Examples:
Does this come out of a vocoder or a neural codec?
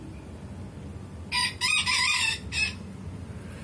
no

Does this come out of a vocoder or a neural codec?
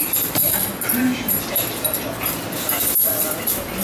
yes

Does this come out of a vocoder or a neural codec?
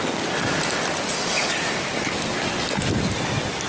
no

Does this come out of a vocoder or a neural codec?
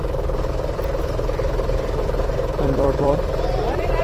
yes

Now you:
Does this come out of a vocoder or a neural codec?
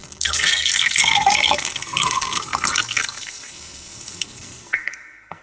yes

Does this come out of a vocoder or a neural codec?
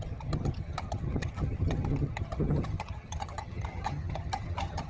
yes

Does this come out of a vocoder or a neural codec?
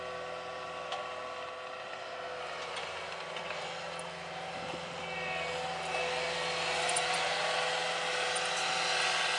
no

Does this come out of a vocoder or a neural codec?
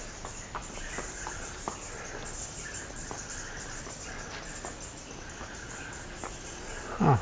no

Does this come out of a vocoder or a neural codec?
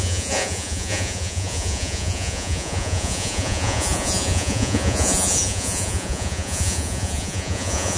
yes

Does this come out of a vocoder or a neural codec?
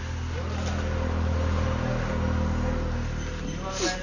no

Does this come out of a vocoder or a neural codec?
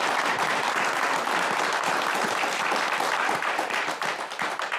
yes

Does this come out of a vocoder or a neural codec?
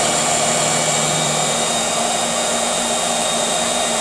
yes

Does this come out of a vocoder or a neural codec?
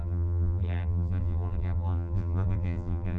yes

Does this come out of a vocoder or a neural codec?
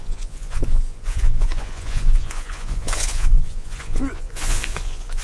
yes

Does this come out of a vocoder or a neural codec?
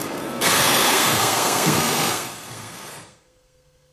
yes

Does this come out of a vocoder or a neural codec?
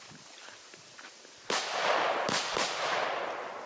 no